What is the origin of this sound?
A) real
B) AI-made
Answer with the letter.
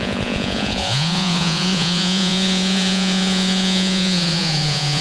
B